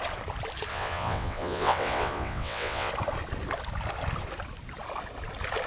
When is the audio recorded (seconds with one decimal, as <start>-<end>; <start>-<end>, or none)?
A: 0.0-0.7; 2.9-5.7

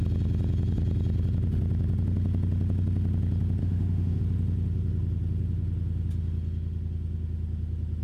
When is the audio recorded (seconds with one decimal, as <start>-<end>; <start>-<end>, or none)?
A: 0.0-3.6; 4.2-8.0

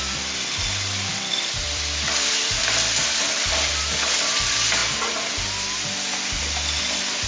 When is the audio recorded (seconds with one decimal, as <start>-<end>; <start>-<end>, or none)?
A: 0.0-1.1; 3.8-7.3

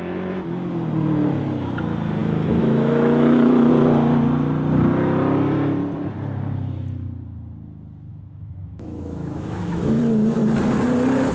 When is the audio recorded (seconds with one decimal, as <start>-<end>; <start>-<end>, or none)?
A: 0.0-2.2; 3.7-8.1; 10.0-11.3

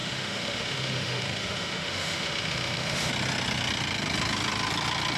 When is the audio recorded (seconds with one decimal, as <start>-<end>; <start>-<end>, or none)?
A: 3.1-5.2

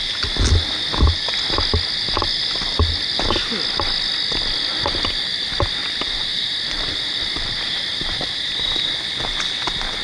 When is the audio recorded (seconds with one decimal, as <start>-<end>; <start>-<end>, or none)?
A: 0.0-10.0

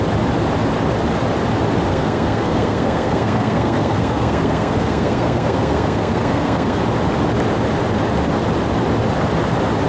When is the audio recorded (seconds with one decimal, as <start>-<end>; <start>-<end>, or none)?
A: 0.0-1.9; 6.8-9.9

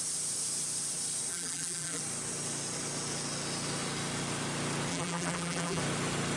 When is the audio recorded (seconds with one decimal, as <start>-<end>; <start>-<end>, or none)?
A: 0.0-1.3; 2.0-4.9; 5.8-6.4